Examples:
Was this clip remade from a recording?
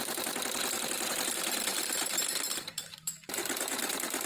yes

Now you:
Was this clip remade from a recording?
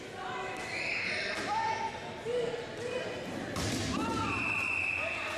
no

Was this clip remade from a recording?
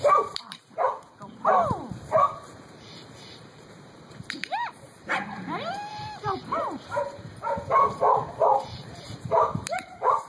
yes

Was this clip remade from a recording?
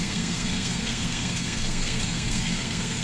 yes